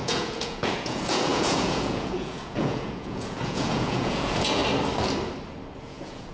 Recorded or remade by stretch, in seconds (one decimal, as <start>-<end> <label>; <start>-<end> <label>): 0.0-4.6 remade; 4.6-5.8 recorded; 5.8-6.3 remade